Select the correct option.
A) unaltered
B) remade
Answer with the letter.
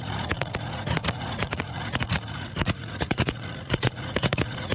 B